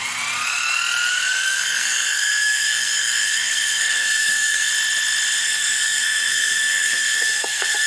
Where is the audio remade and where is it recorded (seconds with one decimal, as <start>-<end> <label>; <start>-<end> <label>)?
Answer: 0.0-1.1 recorded; 1.1-4.7 remade; 4.7-5.4 recorded; 5.4-7.9 remade